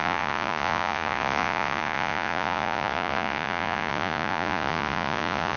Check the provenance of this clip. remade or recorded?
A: remade